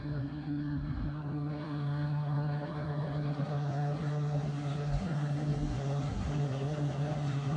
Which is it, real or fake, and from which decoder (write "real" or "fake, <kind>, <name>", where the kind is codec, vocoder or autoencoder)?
fake, codec, SNAC